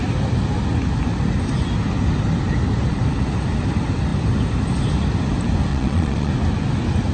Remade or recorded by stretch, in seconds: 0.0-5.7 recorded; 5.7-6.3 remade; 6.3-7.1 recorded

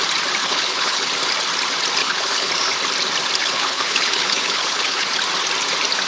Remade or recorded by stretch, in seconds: 0.0-0.4 recorded; 0.4-1.1 remade; 1.1-2.0 recorded; 2.0-2.5 remade; 2.5-3.4 recorded; 3.4-5.1 remade; 5.1-6.1 recorded